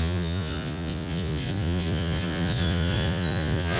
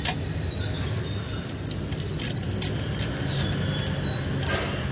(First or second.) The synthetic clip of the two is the first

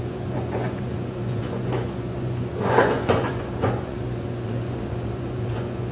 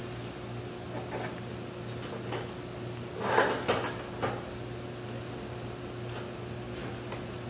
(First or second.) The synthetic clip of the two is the first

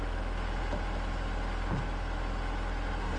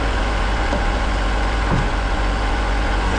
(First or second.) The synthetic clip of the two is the second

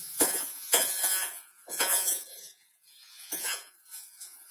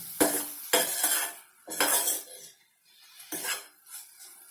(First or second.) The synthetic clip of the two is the first